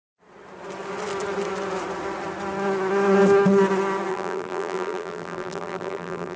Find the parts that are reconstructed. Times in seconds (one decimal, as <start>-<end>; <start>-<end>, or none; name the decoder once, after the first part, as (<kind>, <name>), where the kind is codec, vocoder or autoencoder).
4.1-6.4 (vocoder, BigVGAN v2)